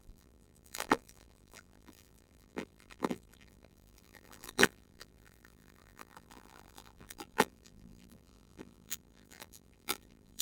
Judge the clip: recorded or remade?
remade